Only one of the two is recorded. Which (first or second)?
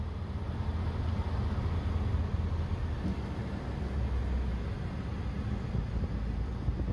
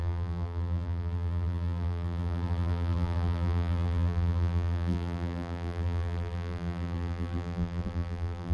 first